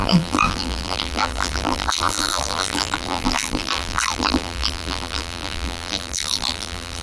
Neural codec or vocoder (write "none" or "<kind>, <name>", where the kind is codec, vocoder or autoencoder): vocoder, BigVGAN v2